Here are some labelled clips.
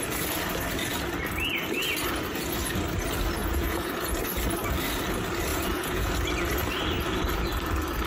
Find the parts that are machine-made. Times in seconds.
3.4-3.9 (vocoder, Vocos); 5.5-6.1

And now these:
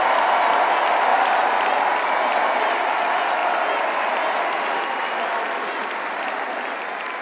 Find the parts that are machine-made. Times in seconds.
none

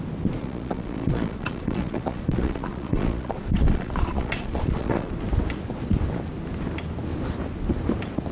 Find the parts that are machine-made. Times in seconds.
0.4-5.1 (vocoder, Vocos)

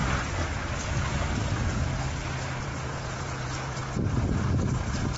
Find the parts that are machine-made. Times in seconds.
2.6-3.8 (vocoder, Vocos)

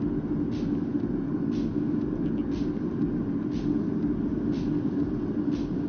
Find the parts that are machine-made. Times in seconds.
none

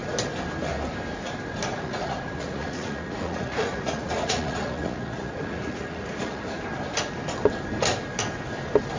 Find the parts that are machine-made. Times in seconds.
1.7-6.6 (vocoder, Vocos)

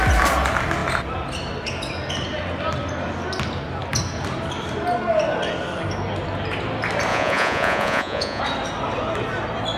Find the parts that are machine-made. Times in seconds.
7.1-8.4 (vocoder, Vocos)